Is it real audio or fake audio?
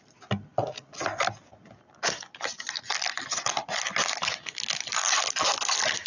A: real